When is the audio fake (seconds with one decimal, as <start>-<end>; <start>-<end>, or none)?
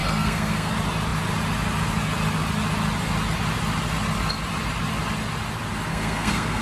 0.0-0.7; 5.9-6.6